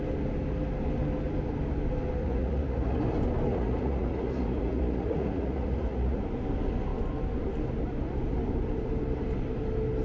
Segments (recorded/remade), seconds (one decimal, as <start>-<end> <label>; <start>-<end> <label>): 0.0-2.2 recorded; 2.2-3.0 remade; 3.0-3.5 recorded; 3.5-6.2 remade; 6.2-10.0 recorded